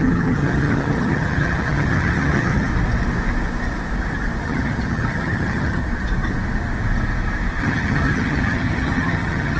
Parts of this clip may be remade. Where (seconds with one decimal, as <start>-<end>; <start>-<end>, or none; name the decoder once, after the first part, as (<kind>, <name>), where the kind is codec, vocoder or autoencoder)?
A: 0.0-2.7 (vocoder, HiFi-GAN); 4.4-5.8; 7.6-9.6